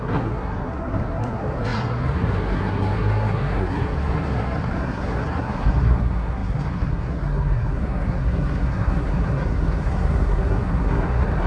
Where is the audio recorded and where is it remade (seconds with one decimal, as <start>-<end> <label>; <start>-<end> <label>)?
0.0-11.5 remade